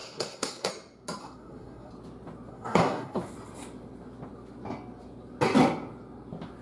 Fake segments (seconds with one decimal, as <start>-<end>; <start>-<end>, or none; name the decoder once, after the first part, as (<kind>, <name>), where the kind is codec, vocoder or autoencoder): 0.0-0.7 (codec, SNAC); 1.2-1.9; 2.5-3.2